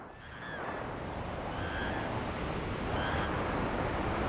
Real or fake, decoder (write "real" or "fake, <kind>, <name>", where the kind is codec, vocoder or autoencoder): real